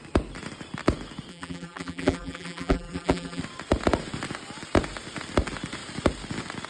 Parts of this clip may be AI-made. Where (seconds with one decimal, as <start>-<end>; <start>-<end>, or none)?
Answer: 1.3-3.4